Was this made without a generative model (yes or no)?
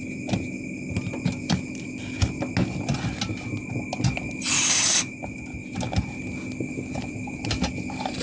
yes